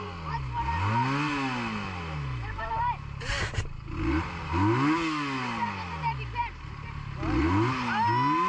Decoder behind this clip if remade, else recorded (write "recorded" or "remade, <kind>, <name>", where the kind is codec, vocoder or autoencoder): recorded